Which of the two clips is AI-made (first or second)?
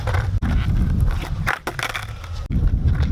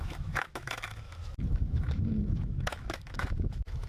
second